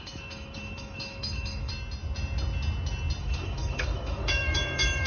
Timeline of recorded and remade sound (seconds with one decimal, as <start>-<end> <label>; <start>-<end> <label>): 0.0-1.7 remade; 1.7-3.2 recorded; 3.2-5.1 remade